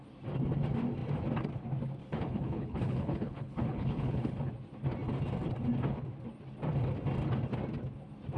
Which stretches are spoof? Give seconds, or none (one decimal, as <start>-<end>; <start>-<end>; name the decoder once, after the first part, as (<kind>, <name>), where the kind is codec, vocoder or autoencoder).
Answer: 2.0-4.5 (codec, HILCodec)